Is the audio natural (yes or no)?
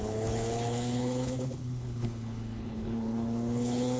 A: no